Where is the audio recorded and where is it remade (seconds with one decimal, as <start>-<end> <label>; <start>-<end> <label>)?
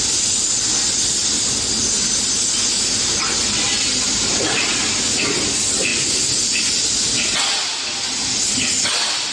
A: 0.0-9.3 recorded